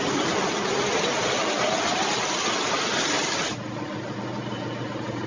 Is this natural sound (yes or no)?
yes